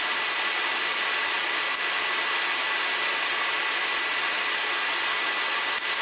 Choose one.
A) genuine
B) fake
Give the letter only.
A